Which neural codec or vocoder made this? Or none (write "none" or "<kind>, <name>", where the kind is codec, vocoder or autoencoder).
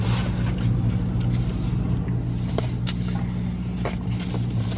none